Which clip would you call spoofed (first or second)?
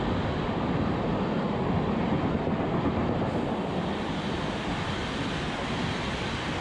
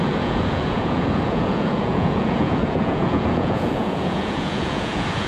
second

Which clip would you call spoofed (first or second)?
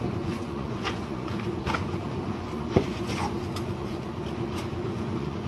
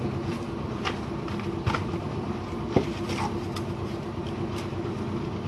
first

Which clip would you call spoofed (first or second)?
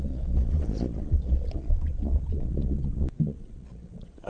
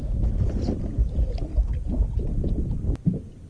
first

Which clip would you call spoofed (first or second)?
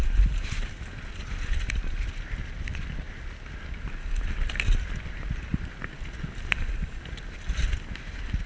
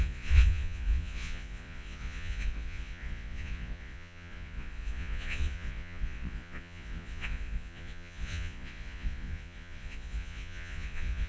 second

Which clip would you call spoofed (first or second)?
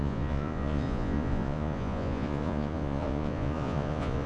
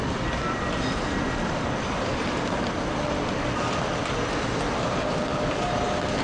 first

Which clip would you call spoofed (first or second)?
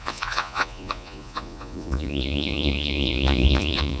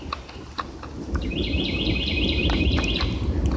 first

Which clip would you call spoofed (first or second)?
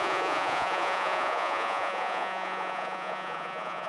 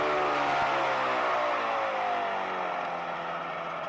first